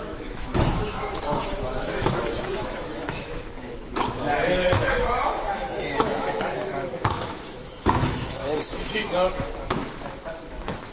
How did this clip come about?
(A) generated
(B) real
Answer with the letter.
A